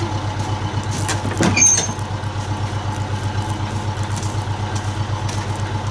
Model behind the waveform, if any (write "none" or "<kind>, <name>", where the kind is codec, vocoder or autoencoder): none